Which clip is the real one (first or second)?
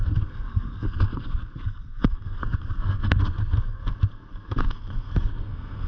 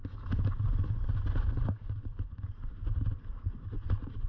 second